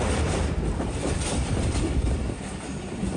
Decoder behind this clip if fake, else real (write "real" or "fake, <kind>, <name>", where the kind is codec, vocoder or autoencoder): fake, vocoder, BigVGAN v2